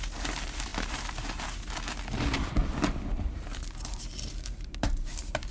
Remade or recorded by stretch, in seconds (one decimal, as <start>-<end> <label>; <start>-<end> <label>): 0.0-2.6 remade; 2.6-3.1 recorded; 3.1-5.5 remade